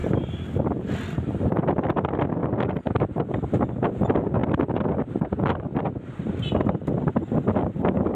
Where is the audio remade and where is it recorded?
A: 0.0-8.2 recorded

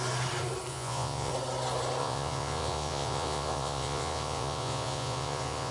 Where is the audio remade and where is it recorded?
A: 0.0-0.7 recorded; 0.7-1.3 remade; 1.3-2.0 recorded; 2.0-5.7 remade

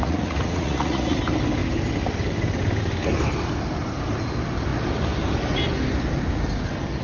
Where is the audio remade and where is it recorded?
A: 0.0-1.2 remade; 1.2-7.0 recorded

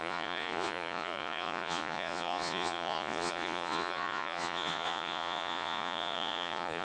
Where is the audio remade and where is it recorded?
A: 0.0-6.8 remade

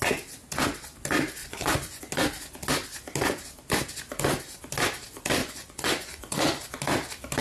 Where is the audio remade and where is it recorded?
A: 0.0-1.4 recorded; 1.4-2.0 remade; 2.0-5.4 recorded; 5.4-6.6 remade; 6.6-7.4 recorded

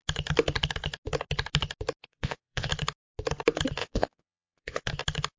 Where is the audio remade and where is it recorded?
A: 0.0-2.0 recorded; 2.0-2.7 remade; 2.7-3.8 recorded; 3.8-4.9 remade; 4.9-5.4 recorded